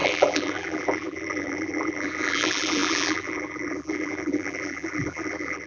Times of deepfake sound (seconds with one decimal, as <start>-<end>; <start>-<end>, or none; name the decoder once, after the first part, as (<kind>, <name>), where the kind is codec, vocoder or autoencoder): 0.0-5.7 (vocoder, BigVGAN v2)